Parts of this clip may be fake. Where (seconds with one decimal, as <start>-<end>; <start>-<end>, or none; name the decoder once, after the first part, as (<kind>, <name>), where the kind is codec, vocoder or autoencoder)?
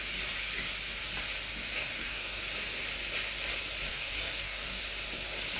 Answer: 1.7-2.4 (codec, DAC); 3.9-4.8